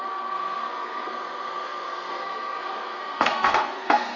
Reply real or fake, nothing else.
fake